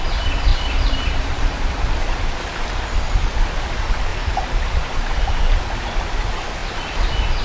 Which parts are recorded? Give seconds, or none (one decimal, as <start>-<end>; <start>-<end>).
0.0-0.5; 1.9-4.1; 5.6-7.4